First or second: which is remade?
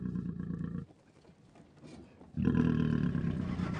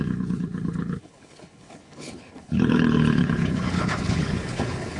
second